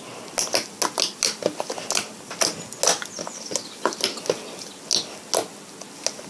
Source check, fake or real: real